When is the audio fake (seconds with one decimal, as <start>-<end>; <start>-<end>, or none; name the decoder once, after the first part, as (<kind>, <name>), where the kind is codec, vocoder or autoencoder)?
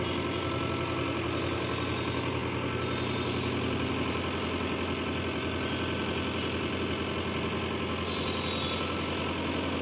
none